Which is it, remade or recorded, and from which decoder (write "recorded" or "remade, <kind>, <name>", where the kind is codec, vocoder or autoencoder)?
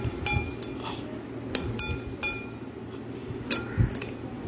recorded